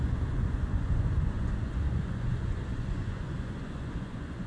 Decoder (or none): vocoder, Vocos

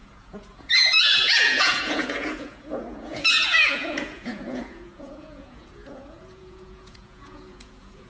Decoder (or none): vocoder, Vocos